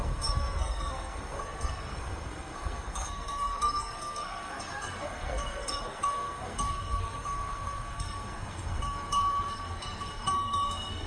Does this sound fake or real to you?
fake